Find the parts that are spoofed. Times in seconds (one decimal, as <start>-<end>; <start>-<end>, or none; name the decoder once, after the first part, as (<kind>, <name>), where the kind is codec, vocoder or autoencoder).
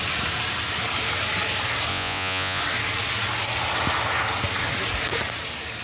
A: 1.9-2.6 (vocoder, Vocos)